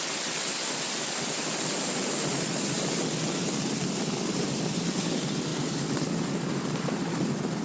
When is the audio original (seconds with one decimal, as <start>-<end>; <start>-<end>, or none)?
0.0-7.6